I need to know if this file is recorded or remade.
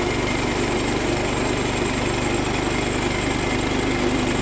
recorded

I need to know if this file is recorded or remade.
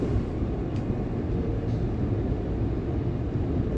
recorded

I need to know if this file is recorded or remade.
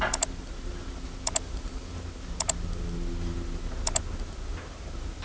recorded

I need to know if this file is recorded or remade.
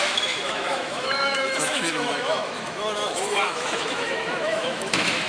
remade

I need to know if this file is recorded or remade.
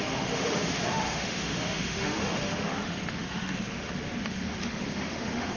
remade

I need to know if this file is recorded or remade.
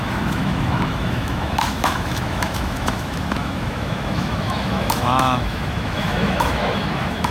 remade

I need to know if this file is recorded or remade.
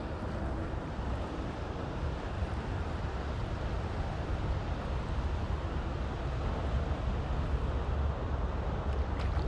recorded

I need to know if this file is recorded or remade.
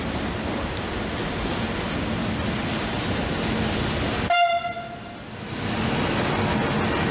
recorded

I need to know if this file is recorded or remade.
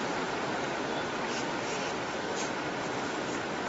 recorded